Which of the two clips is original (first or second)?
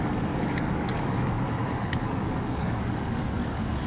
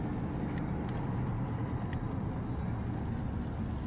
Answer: second